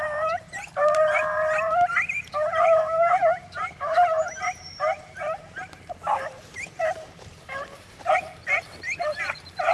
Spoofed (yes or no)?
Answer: yes